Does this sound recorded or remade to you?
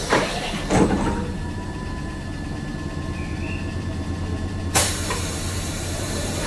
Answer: remade